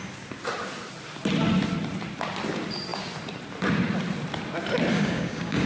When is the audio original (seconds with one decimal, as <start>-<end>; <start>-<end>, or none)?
0.0-4.9